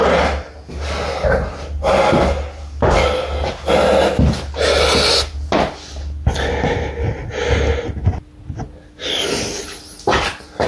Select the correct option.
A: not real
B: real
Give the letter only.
B